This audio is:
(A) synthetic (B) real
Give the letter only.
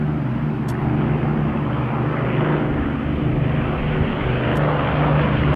B